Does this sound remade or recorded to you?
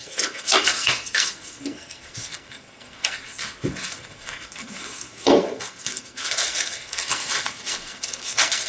remade